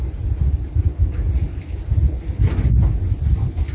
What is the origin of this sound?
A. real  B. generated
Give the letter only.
A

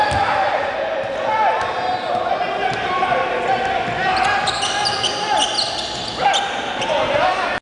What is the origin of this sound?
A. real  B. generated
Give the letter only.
A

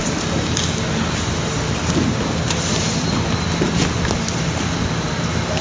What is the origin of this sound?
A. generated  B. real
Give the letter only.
B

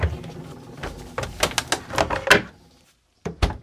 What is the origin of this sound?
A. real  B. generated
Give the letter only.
A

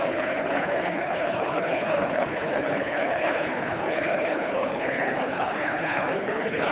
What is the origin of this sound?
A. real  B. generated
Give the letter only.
B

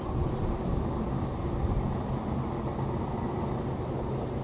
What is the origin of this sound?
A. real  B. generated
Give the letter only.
A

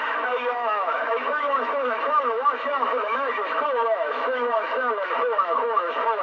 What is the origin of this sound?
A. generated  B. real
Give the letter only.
A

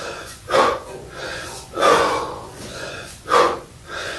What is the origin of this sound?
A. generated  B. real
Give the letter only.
A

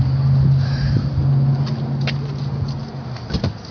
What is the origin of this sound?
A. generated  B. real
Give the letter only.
B